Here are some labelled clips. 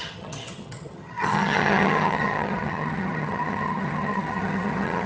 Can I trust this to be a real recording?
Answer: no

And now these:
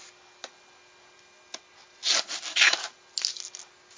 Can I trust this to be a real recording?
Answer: yes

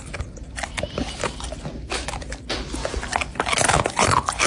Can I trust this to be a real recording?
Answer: yes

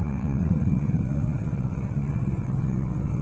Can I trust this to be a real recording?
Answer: no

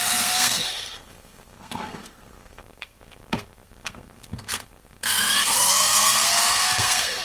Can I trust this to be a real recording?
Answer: no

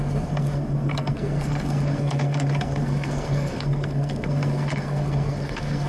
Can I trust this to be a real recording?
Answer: no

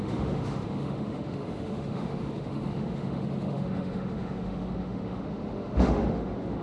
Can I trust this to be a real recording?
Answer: no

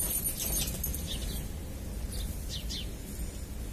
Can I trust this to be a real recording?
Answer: yes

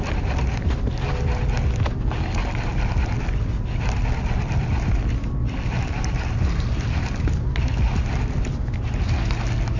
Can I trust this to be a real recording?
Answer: yes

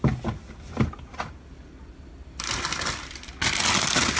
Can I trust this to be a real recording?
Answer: yes